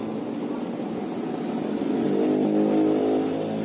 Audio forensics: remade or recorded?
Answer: recorded